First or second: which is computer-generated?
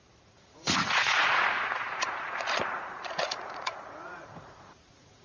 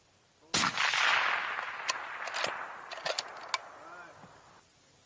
first